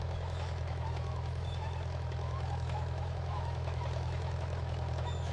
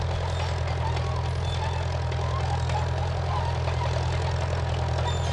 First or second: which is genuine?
second